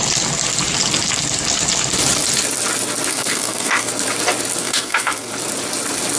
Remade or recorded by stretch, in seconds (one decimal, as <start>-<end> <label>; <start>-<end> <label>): 0.0-3.1 recorded; 3.1-3.9 remade; 3.9-4.6 recorded; 4.6-5.3 remade; 5.3-6.2 recorded